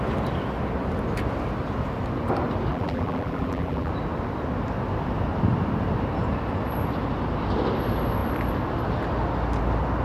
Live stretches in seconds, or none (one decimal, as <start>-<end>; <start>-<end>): 0.0-2.7; 3.9-10.0